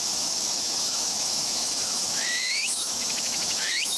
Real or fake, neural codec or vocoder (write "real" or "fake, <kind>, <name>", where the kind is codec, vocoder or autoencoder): fake, autoencoder, DAC-VAE